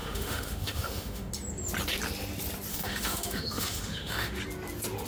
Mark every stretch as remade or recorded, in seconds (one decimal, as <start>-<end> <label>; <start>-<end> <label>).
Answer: 0.0-1.3 remade; 1.3-2.7 recorded; 2.7-4.4 remade; 4.4-5.1 recorded